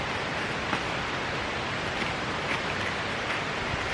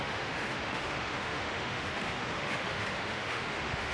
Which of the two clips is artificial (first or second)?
second